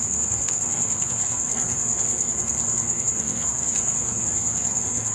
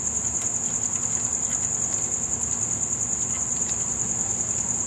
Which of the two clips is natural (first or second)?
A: second